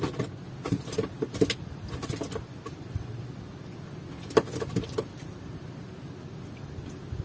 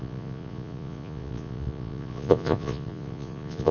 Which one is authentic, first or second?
first